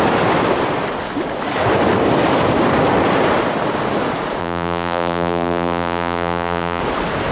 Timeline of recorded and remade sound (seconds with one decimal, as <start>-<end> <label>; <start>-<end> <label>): 0.0-4.4 recorded; 4.4-6.8 remade; 6.8-7.3 recorded